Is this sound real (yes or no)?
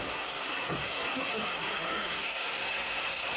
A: no